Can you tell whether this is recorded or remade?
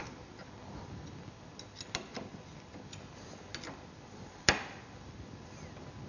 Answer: recorded